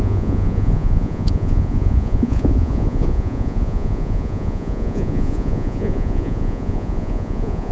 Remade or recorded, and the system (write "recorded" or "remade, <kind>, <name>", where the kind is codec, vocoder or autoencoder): remade, vocoder, Vocos